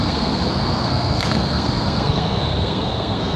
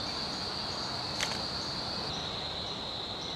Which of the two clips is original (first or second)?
second